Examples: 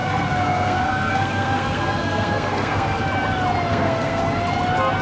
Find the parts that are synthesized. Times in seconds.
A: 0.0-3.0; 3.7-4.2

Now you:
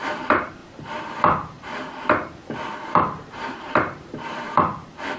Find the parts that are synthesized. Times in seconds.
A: 0.0-1.7; 2.8-5.2

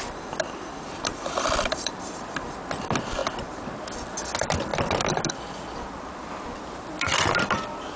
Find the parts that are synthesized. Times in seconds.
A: 1.1-1.9

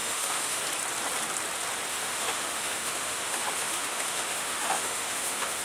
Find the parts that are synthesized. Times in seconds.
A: 0.0-0.6; 1.9-5.6

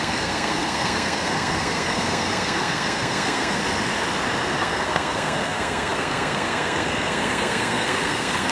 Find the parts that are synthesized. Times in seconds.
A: 0.0-3.6; 4.6-8.5

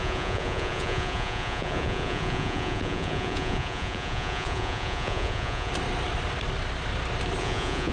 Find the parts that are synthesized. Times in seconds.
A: 0.0-5.7; 7.4-7.9